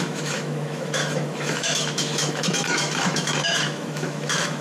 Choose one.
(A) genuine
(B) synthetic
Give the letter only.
B